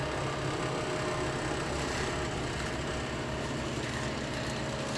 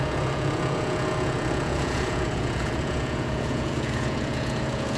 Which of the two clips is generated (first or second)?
second